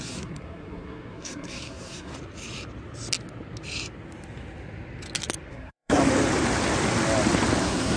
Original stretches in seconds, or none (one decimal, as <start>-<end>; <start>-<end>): 2.1-5.5; 6.0-7.6